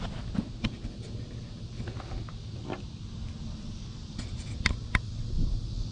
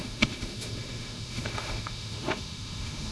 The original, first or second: first